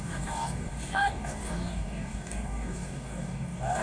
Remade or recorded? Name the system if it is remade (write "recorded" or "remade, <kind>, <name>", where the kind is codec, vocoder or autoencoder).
remade, codec, DAC